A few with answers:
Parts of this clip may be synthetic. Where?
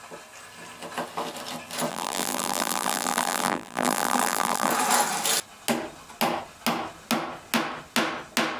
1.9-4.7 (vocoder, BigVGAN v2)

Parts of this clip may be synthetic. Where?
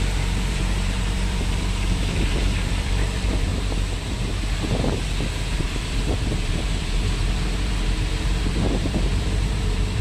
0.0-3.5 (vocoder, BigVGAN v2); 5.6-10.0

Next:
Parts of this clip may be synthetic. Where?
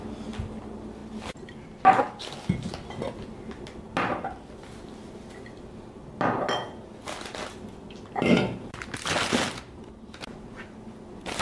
none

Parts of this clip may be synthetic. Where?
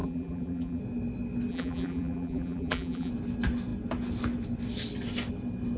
0.0-0.8 (vocoder, BigVGAN v2); 1.5-3.1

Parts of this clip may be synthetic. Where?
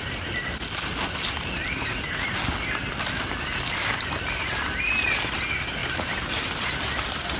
none